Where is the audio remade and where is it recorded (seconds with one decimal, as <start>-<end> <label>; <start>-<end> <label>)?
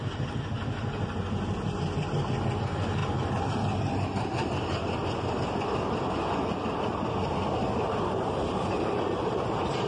0.0-7.6 recorded; 7.6-9.9 remade